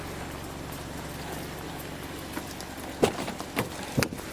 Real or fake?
real